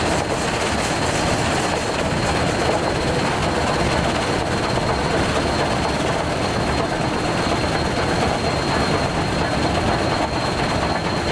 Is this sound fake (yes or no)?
no